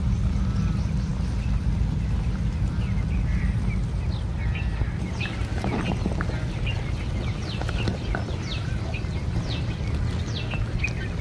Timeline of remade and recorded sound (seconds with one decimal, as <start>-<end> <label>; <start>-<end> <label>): 0.0-11.2 recorded

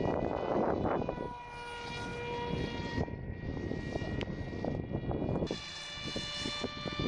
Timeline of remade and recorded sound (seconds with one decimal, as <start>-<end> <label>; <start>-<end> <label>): 0.0-7.1 recorded

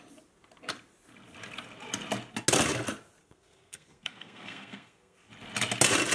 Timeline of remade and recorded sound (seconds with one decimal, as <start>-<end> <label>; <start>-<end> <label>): 0.0-3.2 recorded; 3.2-5.3 remade; 5.3-6.1 recorded

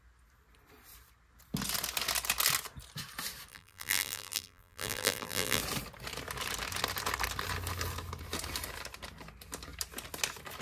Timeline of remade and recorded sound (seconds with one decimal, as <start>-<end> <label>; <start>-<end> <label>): 0.0-3.5 recorded; 3.5-5.6 remade; 5.6-10.6 recorded

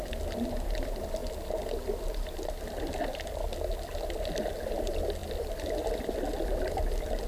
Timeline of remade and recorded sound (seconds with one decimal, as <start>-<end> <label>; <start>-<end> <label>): 0.0-7.3 recorded